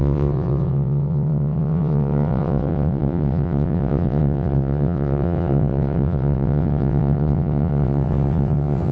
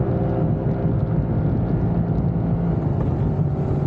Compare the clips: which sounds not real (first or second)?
first